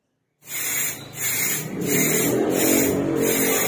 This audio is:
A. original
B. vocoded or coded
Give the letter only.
A